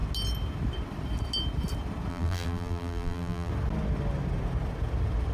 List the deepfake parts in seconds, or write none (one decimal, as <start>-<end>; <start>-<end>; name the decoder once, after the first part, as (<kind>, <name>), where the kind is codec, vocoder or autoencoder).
2.1-3.5 (vocoder, BigVGAN v2)